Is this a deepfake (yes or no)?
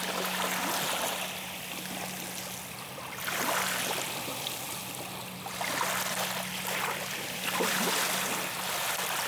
no